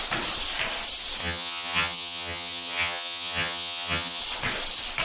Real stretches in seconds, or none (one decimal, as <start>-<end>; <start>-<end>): 0.0-1.2; 4.2-5.0